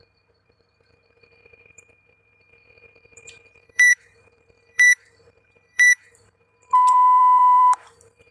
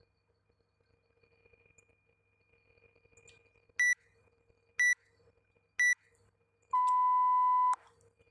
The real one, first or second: second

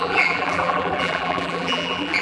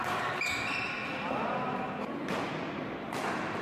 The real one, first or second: second